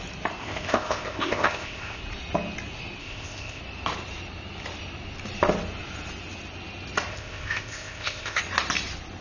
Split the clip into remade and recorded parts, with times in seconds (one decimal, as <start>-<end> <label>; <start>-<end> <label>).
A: 0.0-0.4 recorded; 0.4-2.0 remade; 2.0-3.0 recorded; 3.0-3.6 remade; 3.6-7.1 recorded; 7.1-8.4 remade; 8.4-9.2 recorded